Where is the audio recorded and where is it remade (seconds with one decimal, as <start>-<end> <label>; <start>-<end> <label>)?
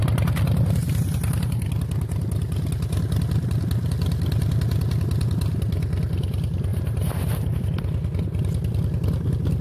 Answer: 0.0-9.6 recorded